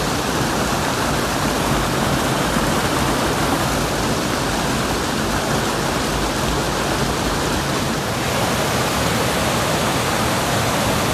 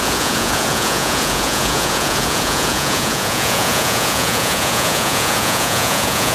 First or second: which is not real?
second